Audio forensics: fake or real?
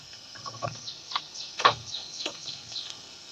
fake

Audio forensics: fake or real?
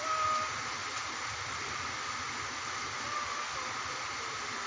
real